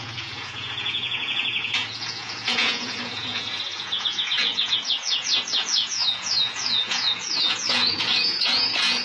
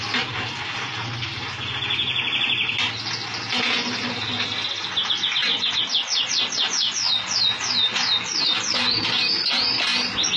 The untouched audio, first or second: second